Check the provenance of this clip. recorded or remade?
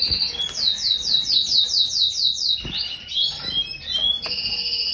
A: recorded